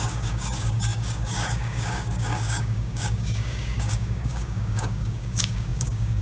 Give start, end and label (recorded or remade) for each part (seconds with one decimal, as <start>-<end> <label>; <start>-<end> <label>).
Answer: 0.0-6.2 remade